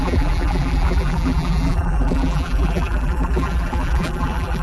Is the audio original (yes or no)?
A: no